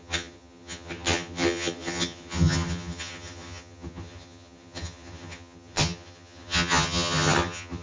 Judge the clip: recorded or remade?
remade